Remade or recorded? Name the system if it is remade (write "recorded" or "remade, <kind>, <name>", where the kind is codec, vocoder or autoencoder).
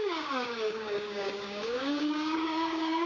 remade, codec, DAC